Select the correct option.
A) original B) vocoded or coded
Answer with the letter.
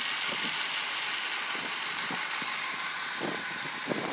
A